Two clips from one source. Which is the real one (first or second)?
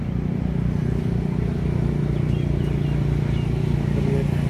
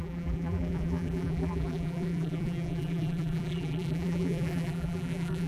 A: first